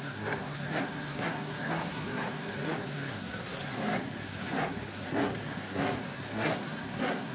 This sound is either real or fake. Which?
fake